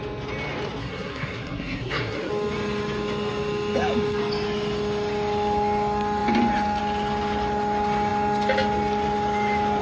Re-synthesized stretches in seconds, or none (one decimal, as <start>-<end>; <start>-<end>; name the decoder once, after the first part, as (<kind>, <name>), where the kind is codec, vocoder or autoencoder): 0.8-2.3 (codec, SNAC)